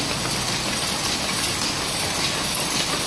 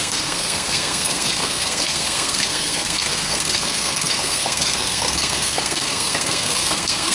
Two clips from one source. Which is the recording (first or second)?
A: first